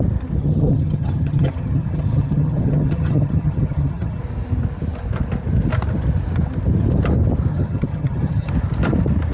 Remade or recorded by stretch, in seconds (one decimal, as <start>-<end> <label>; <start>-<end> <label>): 0.0-0.4 recorded; 0.4-4.2 remade; 4.2-7.5 recorded; 7.5-8.5 remade; 8.5-9.3 recorded